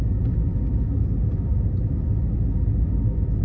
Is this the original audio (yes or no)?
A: no